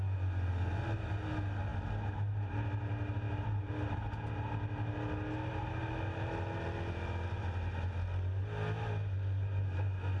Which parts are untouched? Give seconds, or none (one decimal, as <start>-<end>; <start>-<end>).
0.0-10.2

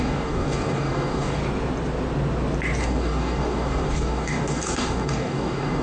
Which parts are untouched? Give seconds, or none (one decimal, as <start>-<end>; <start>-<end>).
1.4-2.8

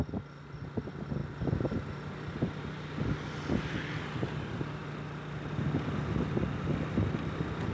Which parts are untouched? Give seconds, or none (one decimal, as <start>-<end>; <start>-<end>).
0.0-7.7

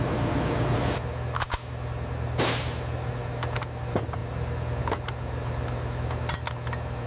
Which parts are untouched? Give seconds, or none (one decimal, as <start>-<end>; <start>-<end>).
0.0-7.1